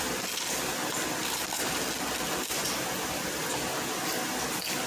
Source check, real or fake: real